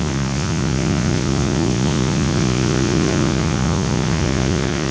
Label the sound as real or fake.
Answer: fake